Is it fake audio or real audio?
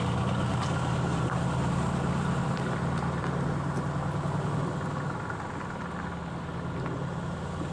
real